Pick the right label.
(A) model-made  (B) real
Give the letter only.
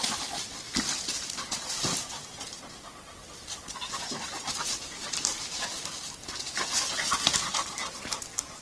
B